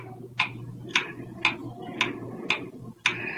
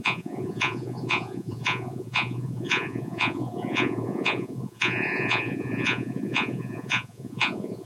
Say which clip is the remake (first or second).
second